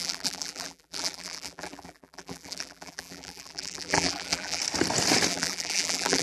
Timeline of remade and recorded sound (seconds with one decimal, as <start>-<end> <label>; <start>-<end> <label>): 0.0-4.6 remade; 4.6-5.3 recorded; 5.3-6.2 remade